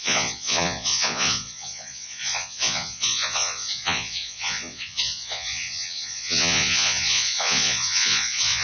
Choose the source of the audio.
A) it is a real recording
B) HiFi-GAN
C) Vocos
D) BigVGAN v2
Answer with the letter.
C